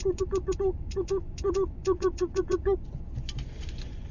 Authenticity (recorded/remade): remade